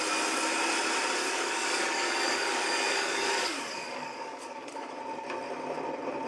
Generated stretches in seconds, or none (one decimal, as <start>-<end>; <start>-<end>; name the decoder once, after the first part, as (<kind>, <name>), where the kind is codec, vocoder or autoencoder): 1.2-5.0 (codec, DAC)